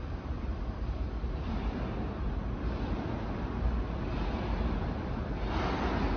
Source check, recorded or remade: recorded